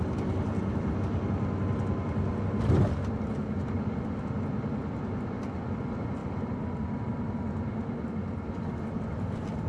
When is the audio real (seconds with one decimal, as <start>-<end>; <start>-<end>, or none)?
0.0-9.7